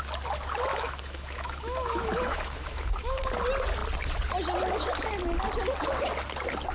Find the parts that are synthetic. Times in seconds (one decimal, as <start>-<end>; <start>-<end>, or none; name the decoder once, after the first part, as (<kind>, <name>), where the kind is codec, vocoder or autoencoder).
0.7-3.2 (autoencoder, DAC-VAE)